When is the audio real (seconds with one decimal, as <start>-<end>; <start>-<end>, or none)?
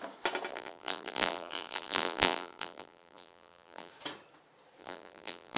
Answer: 0.0-0.5; 3.9-4.8